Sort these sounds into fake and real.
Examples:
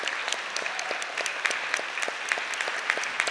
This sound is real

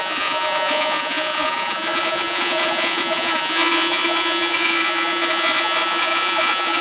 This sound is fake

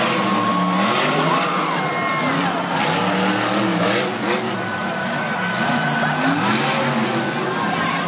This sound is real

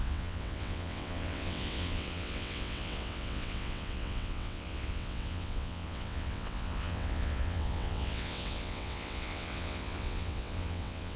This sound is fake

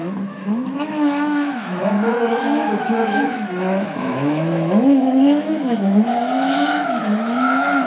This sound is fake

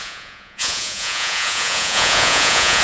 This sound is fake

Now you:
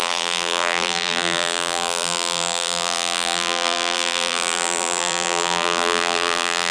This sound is fake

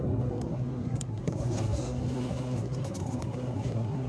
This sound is fake